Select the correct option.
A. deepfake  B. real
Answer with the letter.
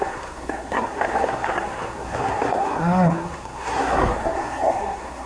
A